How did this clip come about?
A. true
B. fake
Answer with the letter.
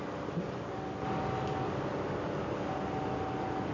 A